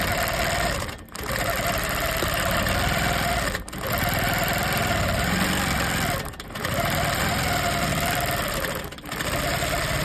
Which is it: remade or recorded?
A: recorded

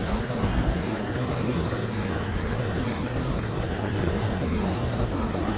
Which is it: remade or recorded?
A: remade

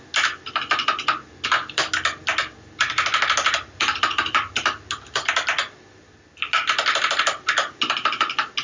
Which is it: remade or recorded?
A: recorded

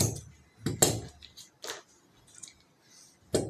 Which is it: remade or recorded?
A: recorded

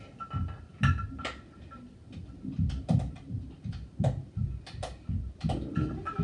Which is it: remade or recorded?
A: recorded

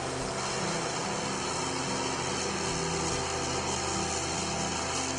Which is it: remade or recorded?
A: recorded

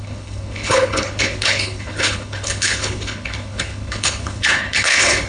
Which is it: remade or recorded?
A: remade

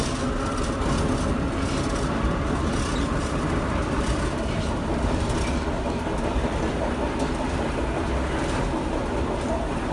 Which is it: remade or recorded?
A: recorded